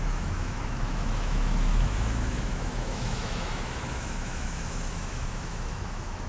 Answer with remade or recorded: remade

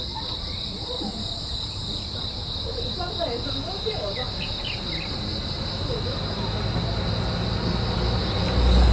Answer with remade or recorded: recorded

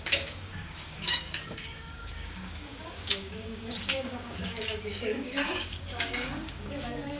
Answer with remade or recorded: remade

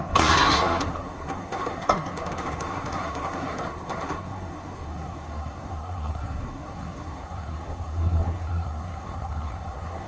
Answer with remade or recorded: remade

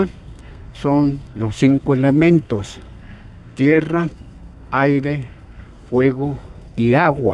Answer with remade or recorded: remade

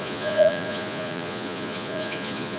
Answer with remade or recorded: remade